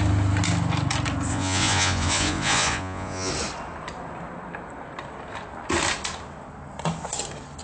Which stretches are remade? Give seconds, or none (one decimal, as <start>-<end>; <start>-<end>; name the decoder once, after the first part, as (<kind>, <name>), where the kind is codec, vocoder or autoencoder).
1.3-3.3 (vocoder, Vocos)